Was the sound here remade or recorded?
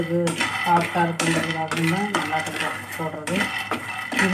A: recorded